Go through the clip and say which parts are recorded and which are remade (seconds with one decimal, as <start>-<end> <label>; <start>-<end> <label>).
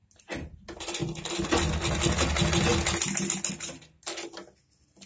0.0-5.1 recorded